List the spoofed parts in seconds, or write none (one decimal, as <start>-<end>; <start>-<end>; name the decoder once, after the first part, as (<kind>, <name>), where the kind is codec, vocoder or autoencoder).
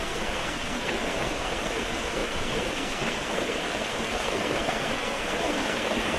0.0-6.2 (codec, SNAC)